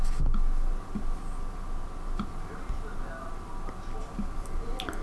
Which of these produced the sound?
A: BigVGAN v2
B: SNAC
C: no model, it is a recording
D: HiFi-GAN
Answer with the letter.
C